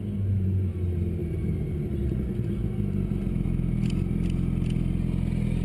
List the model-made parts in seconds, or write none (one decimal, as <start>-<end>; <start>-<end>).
none